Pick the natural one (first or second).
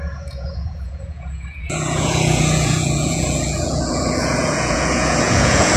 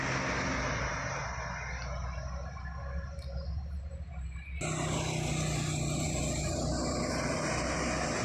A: second